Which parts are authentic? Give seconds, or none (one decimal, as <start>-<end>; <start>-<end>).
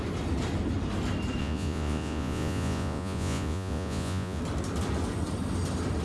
0.0-1.4; 4.4-6.0